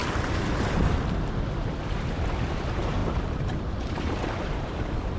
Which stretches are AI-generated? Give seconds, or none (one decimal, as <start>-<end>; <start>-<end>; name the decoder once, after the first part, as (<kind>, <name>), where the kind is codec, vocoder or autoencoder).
2.5-5.2 (vocoder, BigVGAN v2)

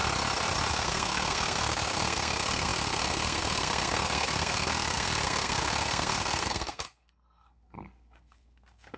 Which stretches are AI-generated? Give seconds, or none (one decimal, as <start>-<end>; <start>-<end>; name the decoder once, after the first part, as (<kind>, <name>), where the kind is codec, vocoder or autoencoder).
0.7-9.0 (codec, SNAC)

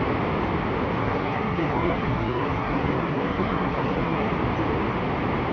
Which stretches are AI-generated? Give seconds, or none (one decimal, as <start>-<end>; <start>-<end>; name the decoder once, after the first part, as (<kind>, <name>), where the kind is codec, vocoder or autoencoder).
1.0-4.3 (codec, SNAC)

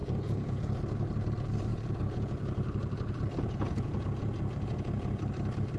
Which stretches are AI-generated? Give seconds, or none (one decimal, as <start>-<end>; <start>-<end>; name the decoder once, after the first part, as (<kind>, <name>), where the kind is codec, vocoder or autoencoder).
0.0-0.8 (vocoder, Vocos); 1.7-5.2

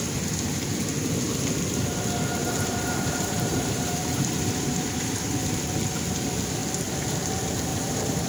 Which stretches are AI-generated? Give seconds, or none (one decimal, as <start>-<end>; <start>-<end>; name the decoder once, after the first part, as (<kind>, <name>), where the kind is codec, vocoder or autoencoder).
2.4-5.4 (vocoder, BigVGAN v2); 7.7-8.3

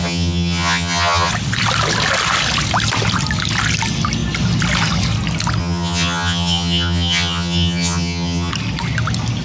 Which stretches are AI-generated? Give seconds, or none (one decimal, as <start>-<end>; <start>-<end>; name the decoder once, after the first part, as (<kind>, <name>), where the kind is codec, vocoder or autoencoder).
0.0-1.3 (vocoder, HiFi-GAN); 5.6-8.5

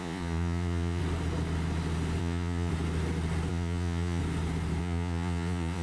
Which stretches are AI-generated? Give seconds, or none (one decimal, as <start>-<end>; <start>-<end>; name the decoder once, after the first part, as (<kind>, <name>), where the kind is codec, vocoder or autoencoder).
0.0-1.0 (vocoder, Vocos); 2.2-2.7; 3.5-4.2; 4.8-5.8

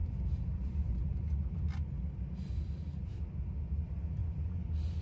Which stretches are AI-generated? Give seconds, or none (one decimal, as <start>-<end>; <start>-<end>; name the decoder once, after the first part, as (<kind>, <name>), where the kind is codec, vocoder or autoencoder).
none